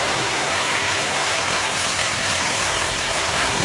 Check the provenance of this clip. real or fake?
fake